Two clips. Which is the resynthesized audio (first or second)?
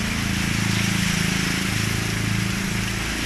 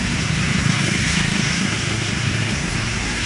second